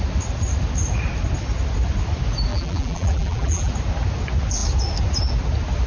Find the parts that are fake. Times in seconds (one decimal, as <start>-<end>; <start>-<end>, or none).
2.5-3.7